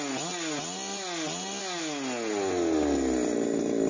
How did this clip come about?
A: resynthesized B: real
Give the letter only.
B